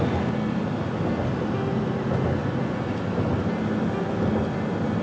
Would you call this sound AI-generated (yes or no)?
no